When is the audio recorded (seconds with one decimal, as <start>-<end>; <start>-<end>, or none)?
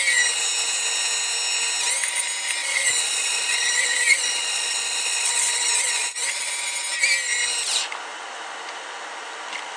0.0-2.6; 6.5-9.8